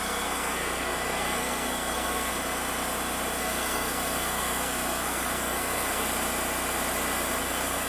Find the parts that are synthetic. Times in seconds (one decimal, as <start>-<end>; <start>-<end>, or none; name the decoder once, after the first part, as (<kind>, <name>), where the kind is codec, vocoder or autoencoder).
0.0-2.3 (codec, SNAC); 3.4-6.0; 7.4-7.9